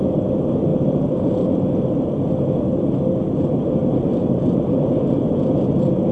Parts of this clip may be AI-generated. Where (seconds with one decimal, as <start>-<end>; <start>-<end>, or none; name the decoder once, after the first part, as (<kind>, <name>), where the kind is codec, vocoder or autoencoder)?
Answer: 0.7-2.1 (vocoder, BigVGAN v2); 3.8-5.1